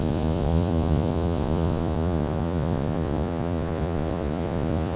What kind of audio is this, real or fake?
fake